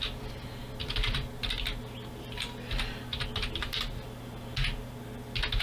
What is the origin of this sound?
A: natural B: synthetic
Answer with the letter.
A